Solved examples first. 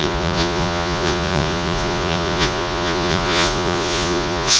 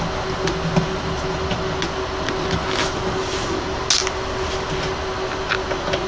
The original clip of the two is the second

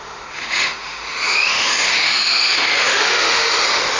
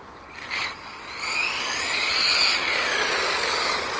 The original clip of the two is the second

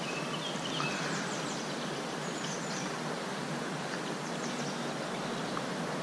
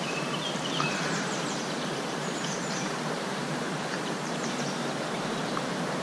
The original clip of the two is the first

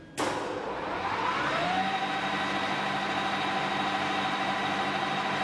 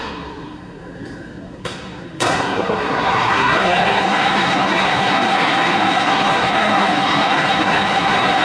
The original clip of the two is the first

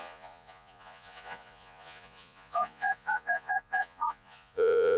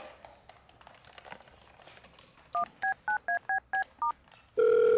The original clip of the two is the second